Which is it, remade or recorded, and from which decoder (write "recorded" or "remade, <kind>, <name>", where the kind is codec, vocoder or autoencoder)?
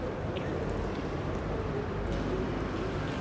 recorded